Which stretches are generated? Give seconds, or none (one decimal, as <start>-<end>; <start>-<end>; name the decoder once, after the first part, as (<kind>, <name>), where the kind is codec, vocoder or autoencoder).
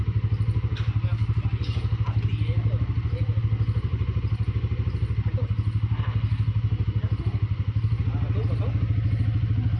none